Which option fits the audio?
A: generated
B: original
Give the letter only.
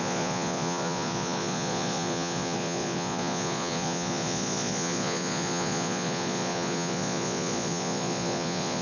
A